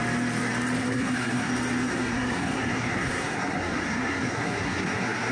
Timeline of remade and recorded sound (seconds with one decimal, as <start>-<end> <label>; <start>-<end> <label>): 0.0-0.8 recorded; 0.8-1.5 remade; 1.5-1.9 recorded; 1.9-5.3 remade